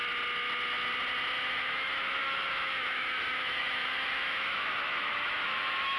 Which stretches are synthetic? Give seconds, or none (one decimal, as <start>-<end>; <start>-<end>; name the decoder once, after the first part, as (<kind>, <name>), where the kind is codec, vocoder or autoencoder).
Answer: 1.5-6.0 (autoencoder, DAC-VAE)